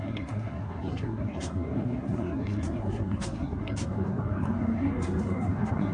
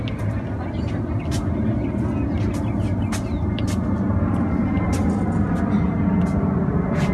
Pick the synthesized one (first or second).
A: first